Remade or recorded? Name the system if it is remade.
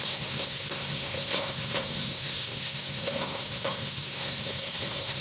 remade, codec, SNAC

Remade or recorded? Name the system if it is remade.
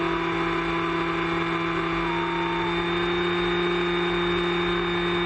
recorded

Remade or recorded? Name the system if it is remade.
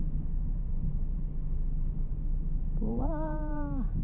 remade, vocoder, BigVGAN v2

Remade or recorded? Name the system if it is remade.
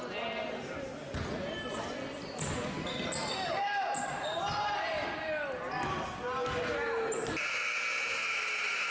recorded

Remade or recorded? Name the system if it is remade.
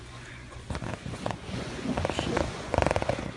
remade, vocoder, Vocos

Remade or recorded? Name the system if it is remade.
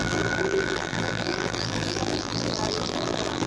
remade, vocoder, BigVGAN v2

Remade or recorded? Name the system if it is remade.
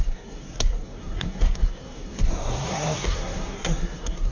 remade, codec, SNAC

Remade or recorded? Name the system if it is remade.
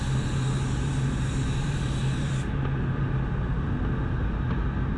recorded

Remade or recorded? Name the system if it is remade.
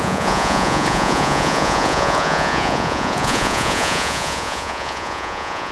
remade, vocoder, Vocos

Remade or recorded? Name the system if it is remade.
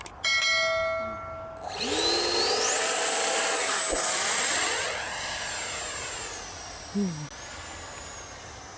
recorded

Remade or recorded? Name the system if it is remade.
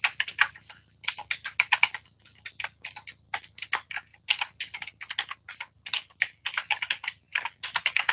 recorded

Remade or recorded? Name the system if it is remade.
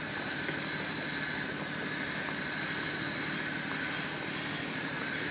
recorded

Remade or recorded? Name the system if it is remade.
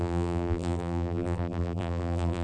remade, vocoder, BigVGAN v2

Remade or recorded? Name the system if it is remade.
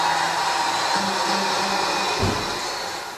recorded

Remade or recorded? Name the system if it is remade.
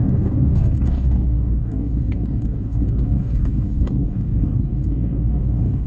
remade, codec, DAC